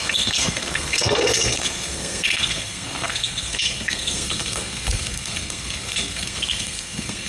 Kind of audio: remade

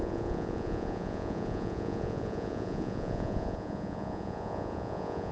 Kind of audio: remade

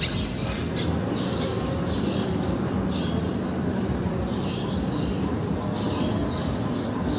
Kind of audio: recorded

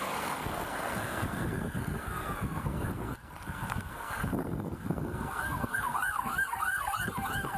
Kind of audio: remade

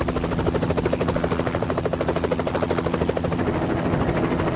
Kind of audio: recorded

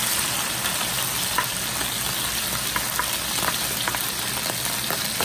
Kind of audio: recorded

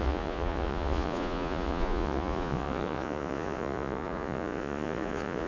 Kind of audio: remade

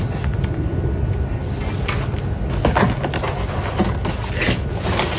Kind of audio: recorded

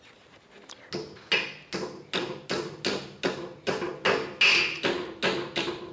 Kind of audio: recorded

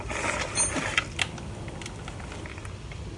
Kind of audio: recorded